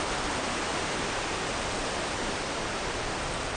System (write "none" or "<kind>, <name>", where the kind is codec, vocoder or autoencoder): vocoder, BigVGAN v2